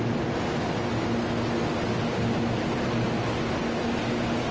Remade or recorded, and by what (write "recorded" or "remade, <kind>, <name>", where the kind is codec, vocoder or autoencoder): recorded